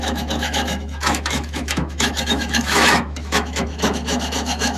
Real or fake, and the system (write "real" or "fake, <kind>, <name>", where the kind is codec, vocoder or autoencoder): fake, autoencoder, DAC-VAE